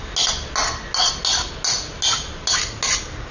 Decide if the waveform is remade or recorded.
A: recorded